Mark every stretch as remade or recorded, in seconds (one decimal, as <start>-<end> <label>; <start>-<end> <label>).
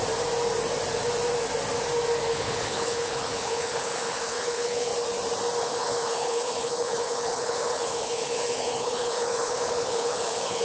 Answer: 0.0-2.3 recorded; 2.3-4.9 remade; 4.9-5.6 recorded; 5.6-10.6 remade